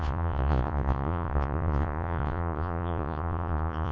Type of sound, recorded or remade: remade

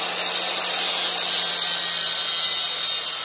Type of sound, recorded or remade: recorded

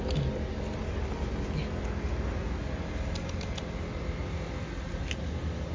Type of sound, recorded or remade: recorded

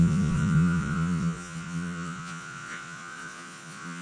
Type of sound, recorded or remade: remade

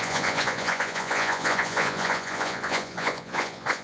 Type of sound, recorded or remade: remade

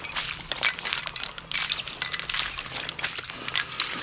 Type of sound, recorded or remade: recorded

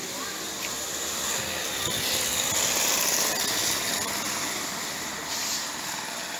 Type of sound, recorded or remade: recorded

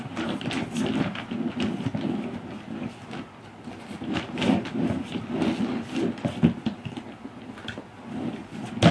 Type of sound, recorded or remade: recorded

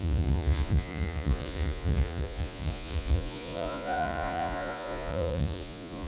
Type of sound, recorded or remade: remade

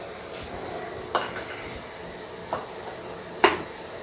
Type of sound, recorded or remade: recorded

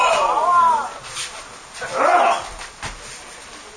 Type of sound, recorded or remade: recorded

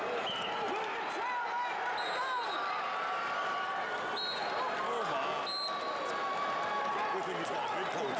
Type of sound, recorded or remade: recorded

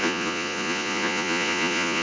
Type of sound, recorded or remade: remade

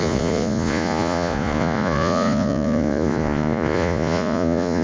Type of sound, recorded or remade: remade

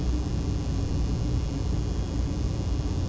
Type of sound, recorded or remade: recorded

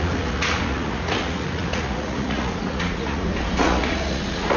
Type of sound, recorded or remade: remade